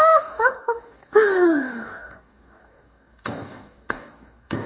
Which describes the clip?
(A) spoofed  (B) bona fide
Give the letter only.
A